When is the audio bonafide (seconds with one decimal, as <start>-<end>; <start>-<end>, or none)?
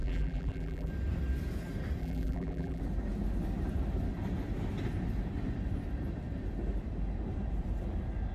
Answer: 0.9-2.0; 2.8-8.3